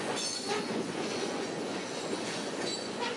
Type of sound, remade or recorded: remade